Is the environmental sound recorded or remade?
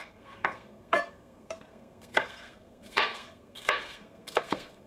remade